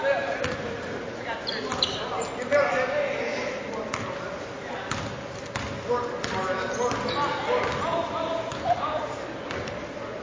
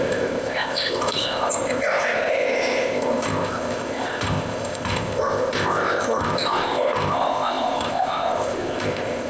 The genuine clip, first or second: first